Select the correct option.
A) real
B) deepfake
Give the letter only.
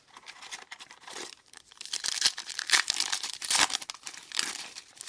B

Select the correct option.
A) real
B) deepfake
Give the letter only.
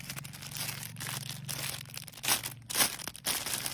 A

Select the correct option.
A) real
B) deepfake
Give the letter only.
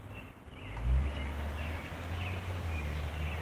A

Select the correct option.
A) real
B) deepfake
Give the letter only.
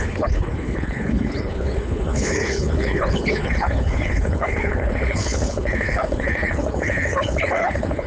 B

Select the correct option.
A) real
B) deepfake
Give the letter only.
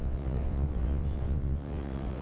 B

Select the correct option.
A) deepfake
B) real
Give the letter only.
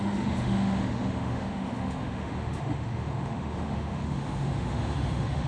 A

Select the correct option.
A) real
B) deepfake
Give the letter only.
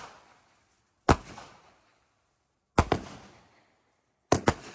A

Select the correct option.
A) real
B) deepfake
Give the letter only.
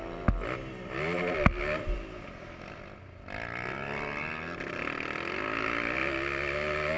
A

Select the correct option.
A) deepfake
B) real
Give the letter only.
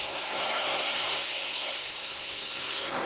A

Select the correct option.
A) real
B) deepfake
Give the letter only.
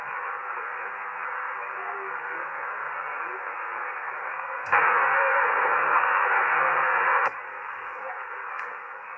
B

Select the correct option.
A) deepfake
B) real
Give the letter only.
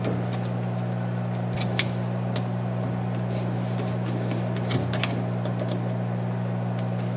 B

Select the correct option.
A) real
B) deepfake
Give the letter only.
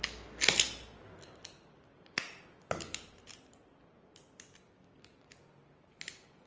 A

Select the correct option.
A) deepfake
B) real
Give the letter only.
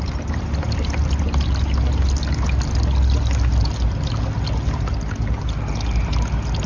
B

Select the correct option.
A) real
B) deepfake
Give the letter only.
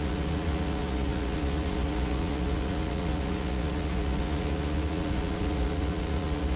B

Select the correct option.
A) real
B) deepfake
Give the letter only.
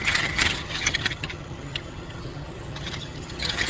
B